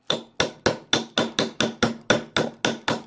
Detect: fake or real real